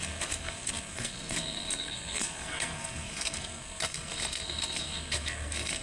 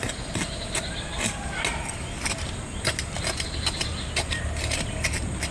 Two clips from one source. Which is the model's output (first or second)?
first